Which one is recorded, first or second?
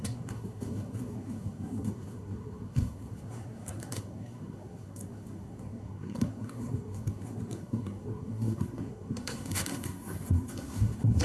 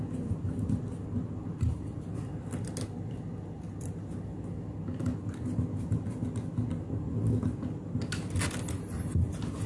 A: second